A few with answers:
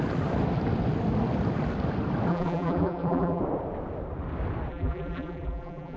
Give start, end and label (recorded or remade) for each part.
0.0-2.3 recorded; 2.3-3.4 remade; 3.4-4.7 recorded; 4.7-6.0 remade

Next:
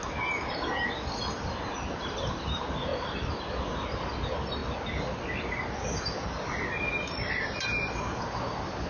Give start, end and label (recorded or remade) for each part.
0.0-8.9 recorded